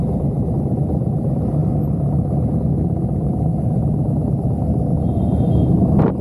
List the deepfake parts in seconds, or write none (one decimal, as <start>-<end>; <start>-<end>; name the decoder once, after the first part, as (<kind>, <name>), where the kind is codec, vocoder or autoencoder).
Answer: none